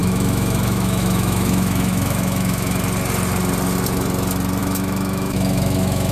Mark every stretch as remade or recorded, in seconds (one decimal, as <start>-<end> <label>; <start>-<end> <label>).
0.0-2.8 remade; 2.8-4.6 recorded; 4.6-6.1 remade